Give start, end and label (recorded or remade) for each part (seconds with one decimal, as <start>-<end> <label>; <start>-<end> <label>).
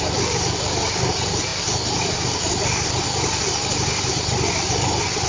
0.0-5.3 recorded